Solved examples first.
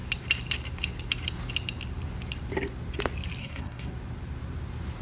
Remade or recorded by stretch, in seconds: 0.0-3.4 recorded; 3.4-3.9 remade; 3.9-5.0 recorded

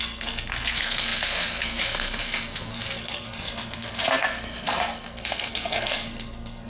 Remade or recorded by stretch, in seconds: 0.0-6.7 remade

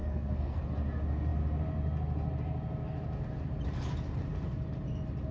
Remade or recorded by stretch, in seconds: 0.0-0.6 remade; 0.6-5.3 recorded